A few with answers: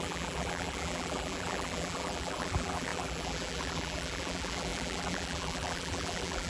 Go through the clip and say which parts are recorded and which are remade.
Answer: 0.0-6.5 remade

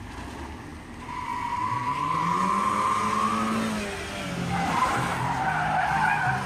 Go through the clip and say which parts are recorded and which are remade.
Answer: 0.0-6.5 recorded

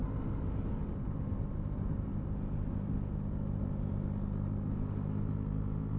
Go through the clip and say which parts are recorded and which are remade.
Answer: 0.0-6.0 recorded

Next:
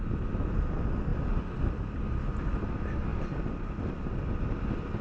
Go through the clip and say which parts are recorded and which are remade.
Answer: 0.0-5.0 recorded

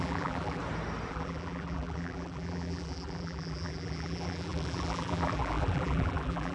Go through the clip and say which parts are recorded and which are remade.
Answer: 0.0-0.6 remade; 0.6-1.1 recorded; 1.1-6.5 remade

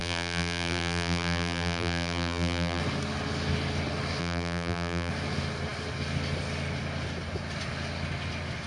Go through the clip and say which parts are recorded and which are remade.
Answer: 0.0-2.8 remade; 2.8-4.2 recorded; 4.2-5.1 remade; 5.1-8.7 recorded

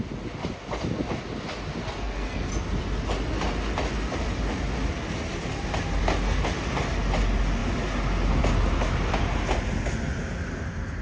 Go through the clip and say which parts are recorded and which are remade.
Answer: 0.0-1.8 recorded; 1.8-2.5 remade; 2.5-11.0 recorded

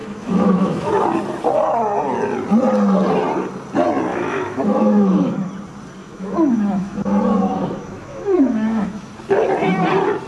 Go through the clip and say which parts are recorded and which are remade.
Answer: 0.0-0.9 remade; 0.9-4.1 recorded; 4.1-5.5 remade; 5.5-6.0 recorded; 6.0-9.1 remade; 9.1-10.3 recorded